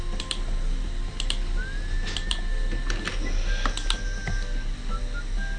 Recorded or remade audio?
recorded